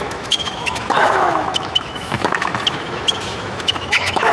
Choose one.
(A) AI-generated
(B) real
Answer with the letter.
A